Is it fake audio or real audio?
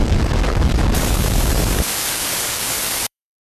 fake